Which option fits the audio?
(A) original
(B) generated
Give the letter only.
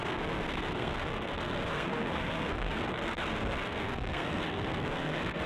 B